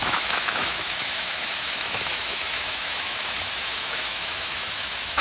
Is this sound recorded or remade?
remade